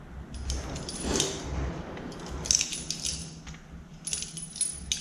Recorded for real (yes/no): yes